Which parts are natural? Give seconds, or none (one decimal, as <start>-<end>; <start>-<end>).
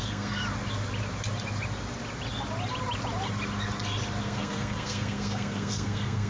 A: 0.4-4.2